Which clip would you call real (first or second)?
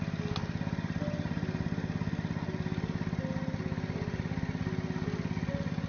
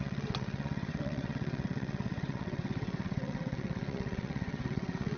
first